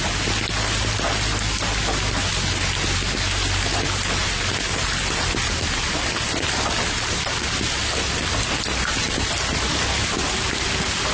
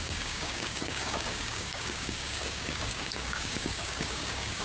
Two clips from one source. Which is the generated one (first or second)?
second